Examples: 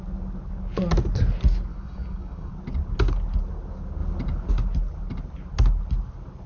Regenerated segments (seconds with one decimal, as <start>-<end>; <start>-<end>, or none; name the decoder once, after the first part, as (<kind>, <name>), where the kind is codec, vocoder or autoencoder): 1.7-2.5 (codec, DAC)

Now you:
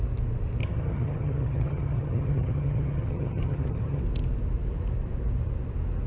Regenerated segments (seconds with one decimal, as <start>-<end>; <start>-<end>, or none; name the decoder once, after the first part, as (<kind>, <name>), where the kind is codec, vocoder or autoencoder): 0.6-4.0 (vocoder, HiFi-GAN)

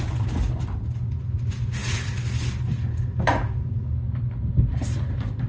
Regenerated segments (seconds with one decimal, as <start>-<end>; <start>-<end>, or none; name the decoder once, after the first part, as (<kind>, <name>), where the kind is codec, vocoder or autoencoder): none

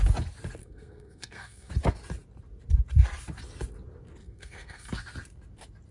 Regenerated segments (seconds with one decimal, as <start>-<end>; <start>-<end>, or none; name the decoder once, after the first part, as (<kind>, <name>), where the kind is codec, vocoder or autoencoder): 0.6-1.7 (codec, SNAC); 4.2-4.9

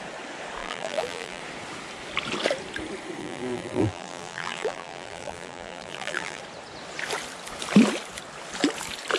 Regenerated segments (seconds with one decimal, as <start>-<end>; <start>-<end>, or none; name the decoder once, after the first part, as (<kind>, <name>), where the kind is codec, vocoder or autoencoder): 0.6-1.4 (vocoder, BigVGAN v2); 3.2-6.4

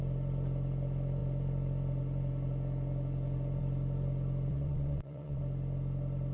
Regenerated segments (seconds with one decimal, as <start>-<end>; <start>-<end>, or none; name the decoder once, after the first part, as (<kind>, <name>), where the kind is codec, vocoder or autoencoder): 4.5-5.4 (vocoder, WaveNeXt)

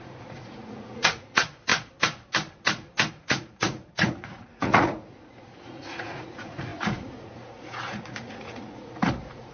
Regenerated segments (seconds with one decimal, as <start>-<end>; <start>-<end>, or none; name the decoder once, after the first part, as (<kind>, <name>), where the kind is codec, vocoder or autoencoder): 0.0-1.7 (vocoder, Vocos); 3.1-9.5

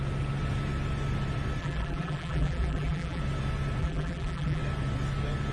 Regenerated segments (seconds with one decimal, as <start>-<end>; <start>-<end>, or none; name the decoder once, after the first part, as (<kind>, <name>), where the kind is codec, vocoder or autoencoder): 1.6-3.2 (vocoder, BigVGAN v2); 3.8-4.6